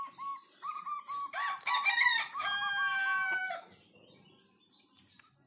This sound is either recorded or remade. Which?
recorded